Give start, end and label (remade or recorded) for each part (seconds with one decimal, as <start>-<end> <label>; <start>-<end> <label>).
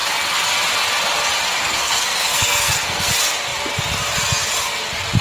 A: 0.0-1.6 recorded; 1.6-3.1 remade; 3.1-5.2 recorded